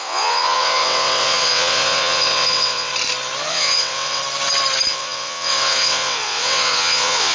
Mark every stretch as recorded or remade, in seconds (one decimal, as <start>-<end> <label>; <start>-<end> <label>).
0.0-2.9 remade; 2.9-3.5 recorded; 3.5-4.2 remade; 4.2-4.9 recorded; 4.9-7.3 remade